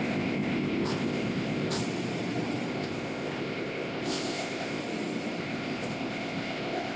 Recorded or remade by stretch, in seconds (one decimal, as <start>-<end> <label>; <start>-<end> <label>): 0.0-1.8 remade; 1.8-2.7 recorded; 2.7-4.8 remade; 4.8-5.4 recorded; 5.4-7.0 remade